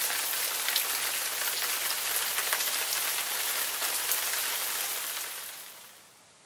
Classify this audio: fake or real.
real